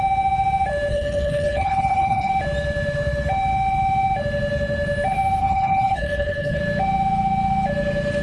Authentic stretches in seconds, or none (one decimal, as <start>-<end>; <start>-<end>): 0.0-0.9; 2.3-5.4; 6.6-8.2